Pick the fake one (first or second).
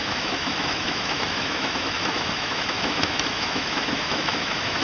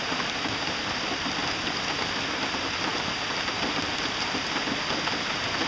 first